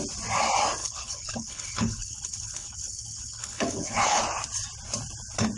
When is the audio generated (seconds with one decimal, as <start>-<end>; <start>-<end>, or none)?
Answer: 0.8-4.2